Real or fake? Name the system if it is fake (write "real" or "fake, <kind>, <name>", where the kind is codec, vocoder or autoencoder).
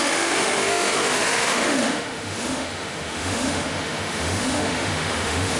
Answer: fake, autoencoder, DAC-VAE